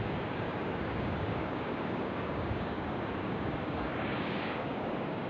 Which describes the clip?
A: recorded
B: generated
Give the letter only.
B